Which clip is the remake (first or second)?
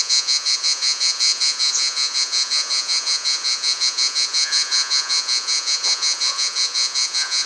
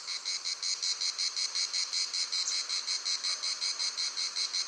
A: first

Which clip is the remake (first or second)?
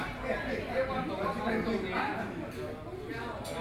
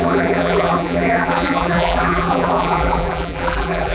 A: second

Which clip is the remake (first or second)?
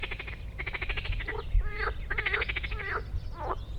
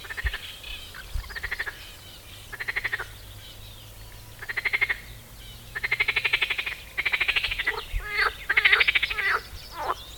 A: first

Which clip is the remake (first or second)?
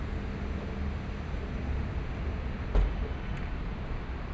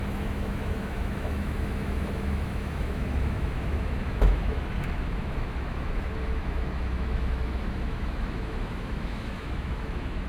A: second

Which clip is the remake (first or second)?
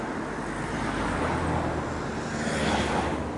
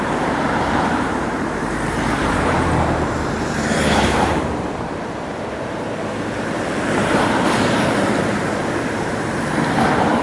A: second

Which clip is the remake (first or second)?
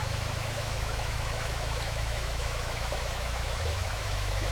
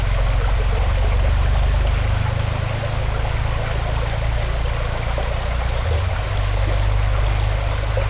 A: first